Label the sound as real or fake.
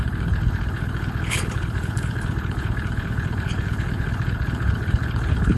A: fake